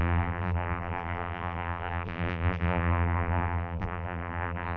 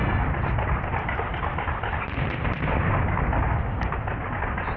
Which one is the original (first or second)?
second